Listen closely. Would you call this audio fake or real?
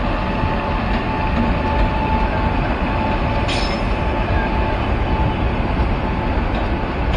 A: real